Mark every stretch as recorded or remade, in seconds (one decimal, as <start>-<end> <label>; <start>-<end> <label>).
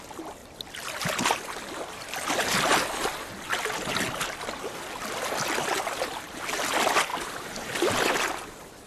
0.0-8.9 recorded